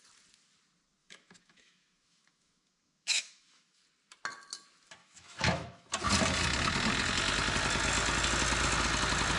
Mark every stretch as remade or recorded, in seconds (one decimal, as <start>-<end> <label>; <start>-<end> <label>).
0.0-1.0 recorded; 1.0-3.8 remade; 3.8-5.0 recorded; 5.0-5.9 remade; 5.9-9.4 recorded